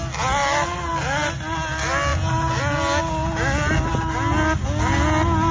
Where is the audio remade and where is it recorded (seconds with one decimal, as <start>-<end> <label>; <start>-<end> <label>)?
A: 0.0-5.5 recorded